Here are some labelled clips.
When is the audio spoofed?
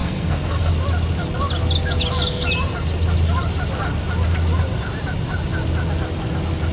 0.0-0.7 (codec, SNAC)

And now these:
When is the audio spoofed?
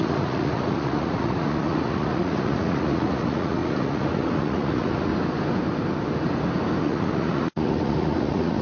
0.0-5.1 (vocoder, Vocos); 6.8-8.6